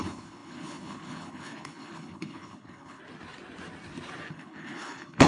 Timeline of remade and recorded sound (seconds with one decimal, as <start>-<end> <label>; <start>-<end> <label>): 0.0-3.0 remade; 3.0-4.3 recorded; 4.3-5.3 remade